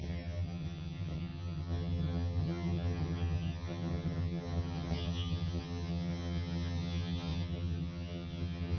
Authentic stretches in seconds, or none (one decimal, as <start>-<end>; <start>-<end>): none